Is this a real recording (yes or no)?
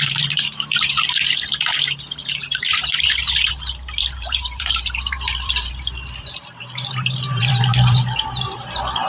no